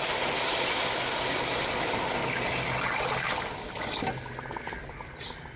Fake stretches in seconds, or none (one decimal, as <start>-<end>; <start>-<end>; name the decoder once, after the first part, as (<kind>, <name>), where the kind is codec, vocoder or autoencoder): none